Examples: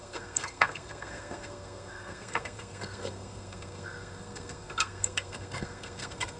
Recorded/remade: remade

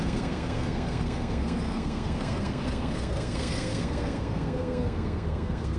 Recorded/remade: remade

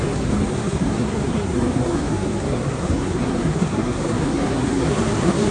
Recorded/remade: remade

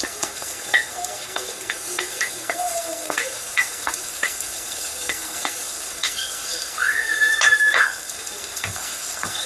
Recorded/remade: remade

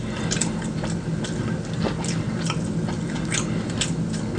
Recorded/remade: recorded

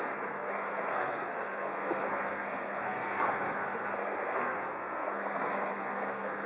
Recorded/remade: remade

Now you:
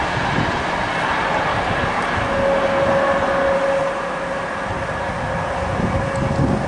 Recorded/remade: recorded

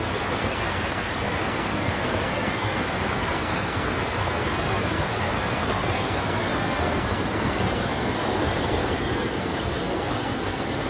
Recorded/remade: remade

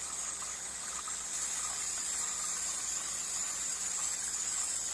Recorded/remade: recorded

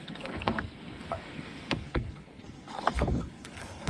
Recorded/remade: remade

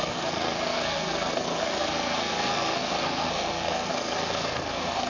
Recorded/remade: remade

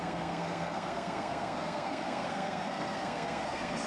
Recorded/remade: remade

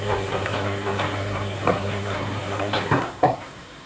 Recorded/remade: remade